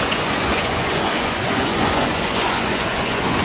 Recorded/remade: remade